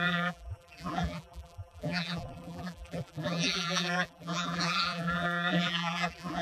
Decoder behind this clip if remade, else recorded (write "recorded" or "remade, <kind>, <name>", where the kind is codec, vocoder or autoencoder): remade, vocoder, BigVGAN v2